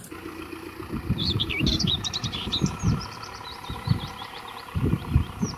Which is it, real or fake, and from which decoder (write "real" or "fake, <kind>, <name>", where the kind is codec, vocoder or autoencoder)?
fake, vocoder, BigVGAN v2